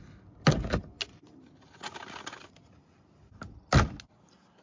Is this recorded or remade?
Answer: recorded